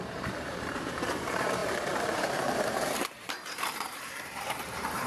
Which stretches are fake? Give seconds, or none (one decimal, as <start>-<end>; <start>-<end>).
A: 0.0-5.1